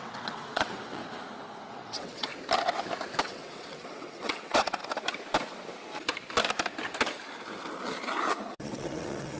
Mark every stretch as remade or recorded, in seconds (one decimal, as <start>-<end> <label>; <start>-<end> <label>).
0.0-1.0 remade; 1.0-1.7 recorded; 1.7-2.3 remade; 2.3-3.2 recorded; 3.2-4.8 remade; 4.8-8.5 recorded; 8.5-9.4 remade